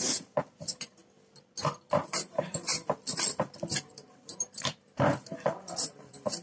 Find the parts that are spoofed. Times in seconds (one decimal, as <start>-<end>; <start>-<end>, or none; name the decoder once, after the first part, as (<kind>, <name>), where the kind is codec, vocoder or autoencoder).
0.0-1.0 (vocoder, BigVGAN v2); 1.6-2.7; 3.6-6.4